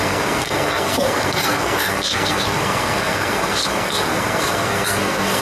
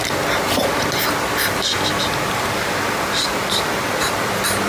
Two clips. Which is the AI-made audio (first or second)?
first